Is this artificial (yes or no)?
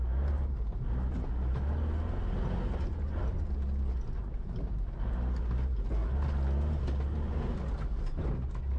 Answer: no